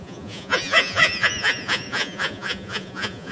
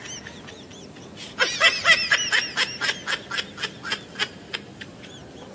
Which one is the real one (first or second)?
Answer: second